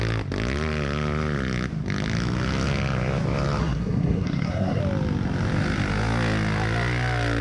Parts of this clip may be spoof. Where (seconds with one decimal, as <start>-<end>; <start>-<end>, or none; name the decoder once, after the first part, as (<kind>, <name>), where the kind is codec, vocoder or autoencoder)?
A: 3.6-4.8 (codec, SNAC)